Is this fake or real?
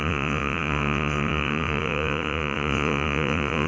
fake